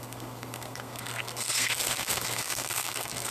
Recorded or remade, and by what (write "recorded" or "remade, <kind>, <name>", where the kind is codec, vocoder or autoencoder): remade, codec, SNAC